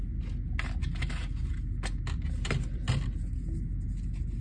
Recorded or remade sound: recorded